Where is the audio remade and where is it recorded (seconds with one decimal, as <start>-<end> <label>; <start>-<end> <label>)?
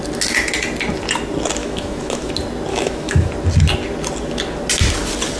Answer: 0.0-1.6 recorded; 1.6-2.3 remade; 2.3-2.7 recorded; 2.7-3.3 remade; 3.3-5.4 recorded